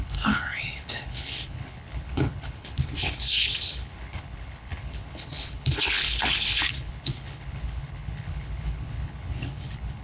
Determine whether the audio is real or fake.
fake